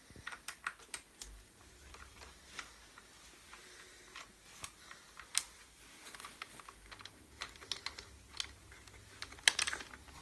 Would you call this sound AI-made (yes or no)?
no